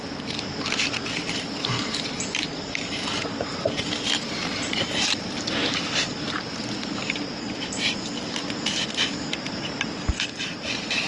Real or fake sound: fake